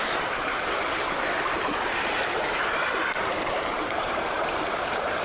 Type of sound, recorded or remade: remade